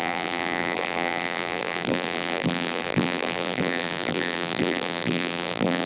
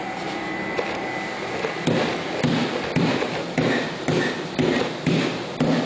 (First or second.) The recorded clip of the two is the second